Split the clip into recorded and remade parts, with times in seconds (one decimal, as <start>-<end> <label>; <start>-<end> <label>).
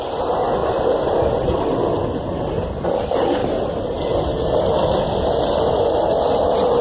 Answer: 0.0-0.6 recorded; 0.6-1.3 remade; 1.3-3.4 recorded; 3.4-4.3 remade; 4.3-6.8 recorded